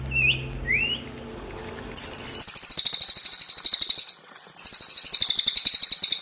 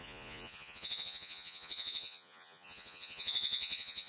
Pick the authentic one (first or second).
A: first